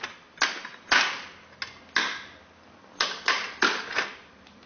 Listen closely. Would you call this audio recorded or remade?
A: recorded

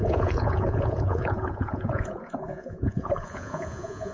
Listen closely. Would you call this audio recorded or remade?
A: remade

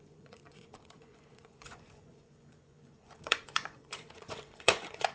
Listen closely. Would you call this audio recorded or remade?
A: remade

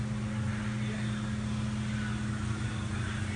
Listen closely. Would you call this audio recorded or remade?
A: recorded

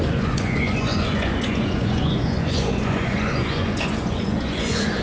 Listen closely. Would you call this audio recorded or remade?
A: remade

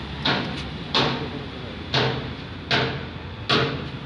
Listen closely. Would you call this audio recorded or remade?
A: recorded